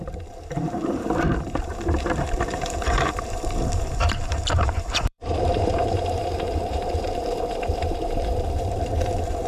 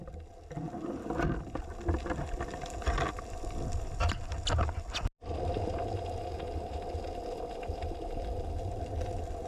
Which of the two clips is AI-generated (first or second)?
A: first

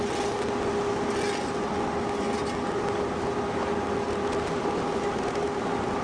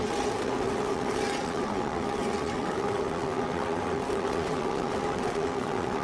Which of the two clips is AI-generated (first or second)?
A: second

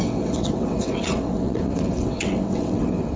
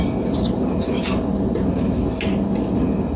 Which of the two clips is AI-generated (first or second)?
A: first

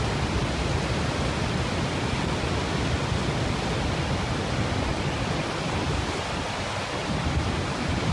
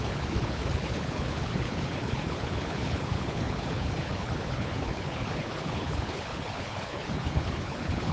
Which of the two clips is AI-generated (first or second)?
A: second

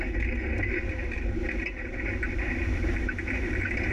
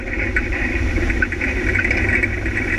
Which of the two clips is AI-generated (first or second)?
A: second